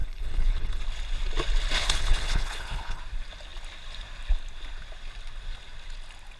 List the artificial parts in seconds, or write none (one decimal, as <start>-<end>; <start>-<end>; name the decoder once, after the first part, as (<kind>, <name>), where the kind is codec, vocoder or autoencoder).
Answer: 0.0-0.8 (codec, HILCodec); 1.8-3.0